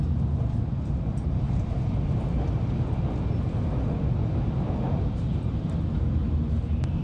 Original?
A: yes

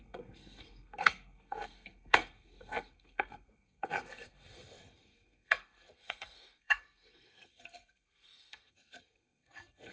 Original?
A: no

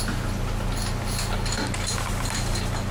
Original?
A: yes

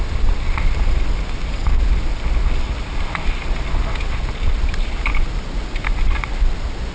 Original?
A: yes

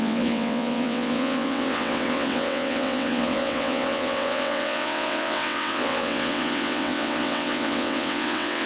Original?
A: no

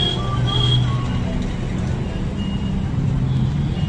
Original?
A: yes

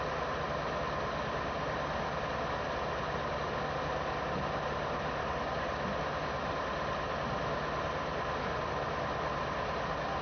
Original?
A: yes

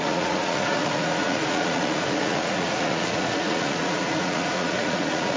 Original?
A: no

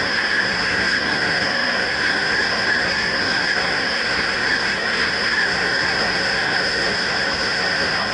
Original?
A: no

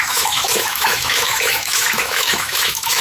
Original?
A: no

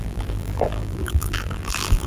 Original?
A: no